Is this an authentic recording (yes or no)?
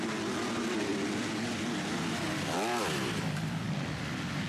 yes